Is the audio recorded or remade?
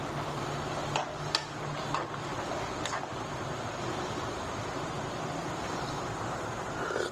recorded